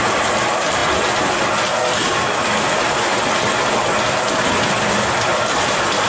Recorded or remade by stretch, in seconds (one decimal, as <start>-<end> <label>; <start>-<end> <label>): 0.0-6.1 recorded